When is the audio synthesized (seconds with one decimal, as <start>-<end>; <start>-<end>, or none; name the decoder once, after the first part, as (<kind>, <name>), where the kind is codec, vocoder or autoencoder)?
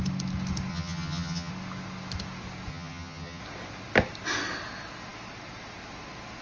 0.7-1.5 (vocoder, HiFi-GAN); 2.7-3.4